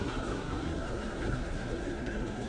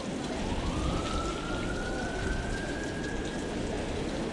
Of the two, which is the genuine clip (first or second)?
second